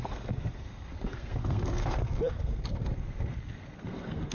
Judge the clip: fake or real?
fake